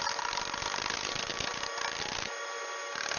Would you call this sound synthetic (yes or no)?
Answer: no